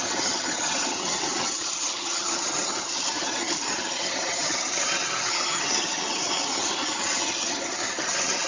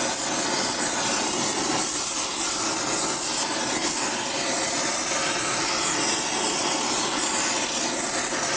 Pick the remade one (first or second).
first